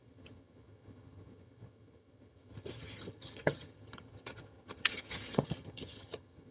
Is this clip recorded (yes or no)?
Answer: no